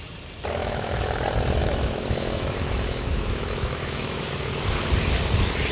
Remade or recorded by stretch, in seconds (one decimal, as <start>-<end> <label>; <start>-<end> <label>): 0.0-0.6 recorded; 0.6-1.2 remade; 1.2-1.6 recorded; 1.6-4.2 remade; 4.2-5.7 recorded